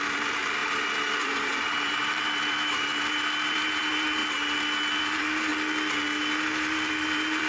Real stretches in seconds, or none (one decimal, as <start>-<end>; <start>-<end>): 4.2-5.0; 5.5-6.2

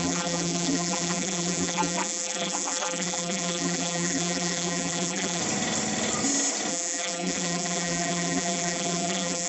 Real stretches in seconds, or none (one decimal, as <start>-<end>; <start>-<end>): 5.4-6.7

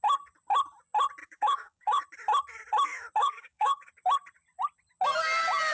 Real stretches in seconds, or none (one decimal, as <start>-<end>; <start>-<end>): 0.0-1.2; 2.0-3.2; 3.9-5.7

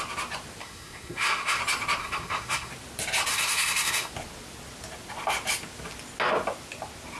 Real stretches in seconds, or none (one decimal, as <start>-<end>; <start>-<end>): 0.0-0.6; 1.6-2.0; 2.7-3.3; 4.1-7.2

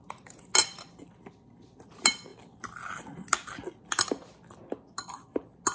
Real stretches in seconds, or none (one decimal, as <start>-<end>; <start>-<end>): 0.5-5.7

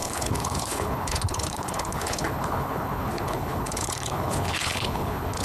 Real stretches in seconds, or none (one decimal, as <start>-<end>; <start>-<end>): none

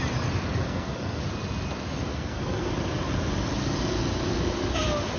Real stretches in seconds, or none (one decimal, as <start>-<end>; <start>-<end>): 0.0-0.6; 1.2-2.1; 2.7-5.2